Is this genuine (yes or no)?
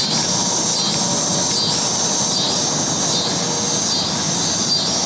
yes